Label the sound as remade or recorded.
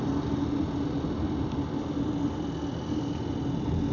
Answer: recorded